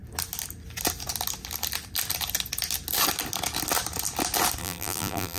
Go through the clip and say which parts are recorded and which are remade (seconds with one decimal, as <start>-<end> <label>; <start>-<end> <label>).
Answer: 0.0-4.6 recorded; 4.6-5.4 remade